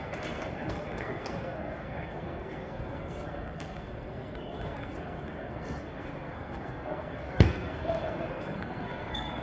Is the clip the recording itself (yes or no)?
no